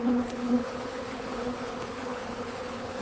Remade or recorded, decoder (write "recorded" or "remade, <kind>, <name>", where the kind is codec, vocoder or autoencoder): remade, codec, HILCodec